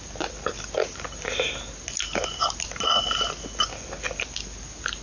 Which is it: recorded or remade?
recorded